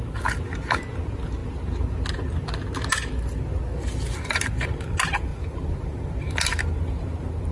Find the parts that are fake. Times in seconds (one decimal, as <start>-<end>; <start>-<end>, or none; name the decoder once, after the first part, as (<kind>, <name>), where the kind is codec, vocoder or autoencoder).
none